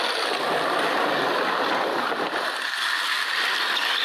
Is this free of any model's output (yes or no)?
yes